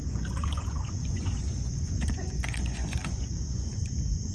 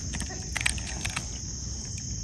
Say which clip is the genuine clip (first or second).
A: second